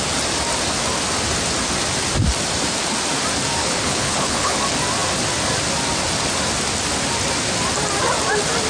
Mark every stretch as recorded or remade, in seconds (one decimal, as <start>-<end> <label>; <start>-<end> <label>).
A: 0.0-3.6 recorded; 3.6-4.6 remade; 4.6-8.7 recorded